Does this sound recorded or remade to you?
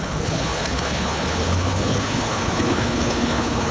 remade